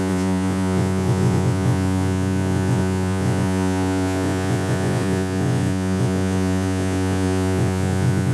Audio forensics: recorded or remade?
remade